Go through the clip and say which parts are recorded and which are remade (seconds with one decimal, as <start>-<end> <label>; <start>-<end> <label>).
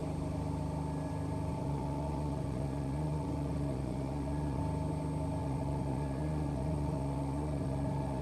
0.0-1.5 recorded; 1.5-4.6 remade; 4.6-5.4 recorded; 5.4-8.2 remade